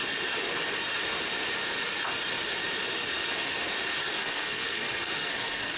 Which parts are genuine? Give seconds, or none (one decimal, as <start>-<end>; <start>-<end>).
0.0-4.0